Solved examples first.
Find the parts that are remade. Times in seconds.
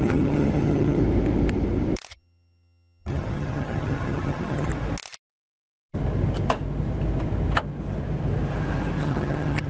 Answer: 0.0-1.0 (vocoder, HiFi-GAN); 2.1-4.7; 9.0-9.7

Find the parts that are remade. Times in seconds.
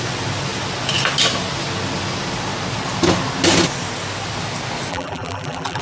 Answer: 4.9-5.8 (vocoder, BigVGAN v2)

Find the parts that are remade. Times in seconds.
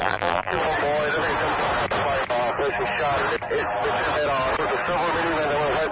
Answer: 0.0-0.6 (vocoder, BigVGAN v2)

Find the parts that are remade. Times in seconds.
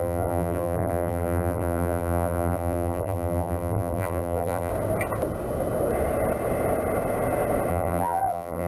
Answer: 0.0-4.7 (vocoder, BigVGAN v2); 7.7-8.7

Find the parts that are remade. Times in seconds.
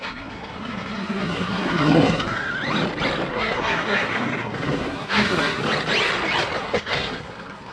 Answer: 0.0-2.5 (codec, SNAC); 3.3-5.6; 6.6-7.7